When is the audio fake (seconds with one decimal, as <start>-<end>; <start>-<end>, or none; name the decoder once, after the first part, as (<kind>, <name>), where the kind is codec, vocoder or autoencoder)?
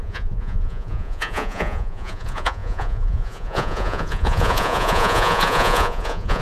0.0-6.4 (vocoder, Vocos)